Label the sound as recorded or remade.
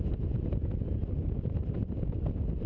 recorded